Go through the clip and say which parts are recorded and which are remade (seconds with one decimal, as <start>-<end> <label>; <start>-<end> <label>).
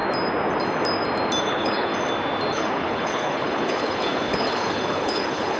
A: 0.0-1.4 recorded; 1.4-1.9 remade; 1.9-2.5 recorded; 2.5-5.6 remade